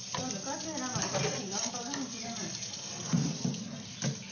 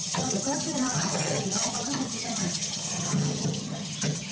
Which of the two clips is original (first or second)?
first